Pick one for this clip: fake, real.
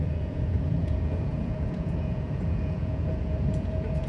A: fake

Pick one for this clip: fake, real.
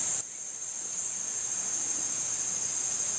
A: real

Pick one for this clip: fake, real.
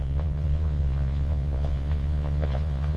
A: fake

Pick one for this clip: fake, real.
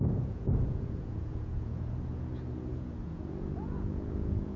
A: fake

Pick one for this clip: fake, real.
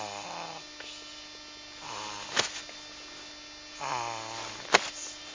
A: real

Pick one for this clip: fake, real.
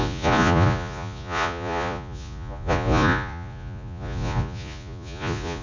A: fake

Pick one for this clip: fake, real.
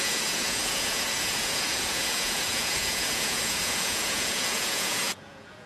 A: fake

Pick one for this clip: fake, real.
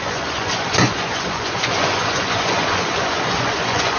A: fake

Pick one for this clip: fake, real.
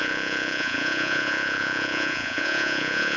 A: fake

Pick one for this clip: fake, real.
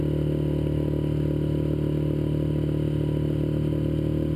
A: real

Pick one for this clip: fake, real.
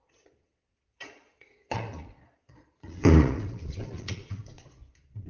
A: fake